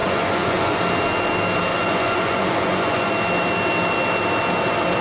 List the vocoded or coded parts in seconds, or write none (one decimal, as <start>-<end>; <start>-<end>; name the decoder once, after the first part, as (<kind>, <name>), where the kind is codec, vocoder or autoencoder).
0.0-0.8 (vocoder, Vocos); 1.7-3.1